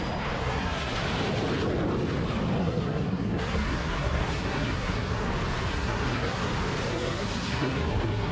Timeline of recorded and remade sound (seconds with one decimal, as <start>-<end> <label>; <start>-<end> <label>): 0.0-0.4 recorded; 0.4-1.0 remade; 1.0-2.6 recorded; 2.6-5.3 remade; 5.3-5.7 recorded; 5.7-6.5 remade; 6.5-6.9 recorded; 6.9-8.3 remade